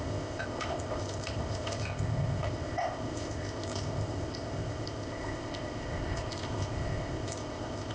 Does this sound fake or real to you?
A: fake